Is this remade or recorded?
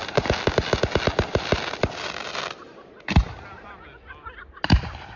recorded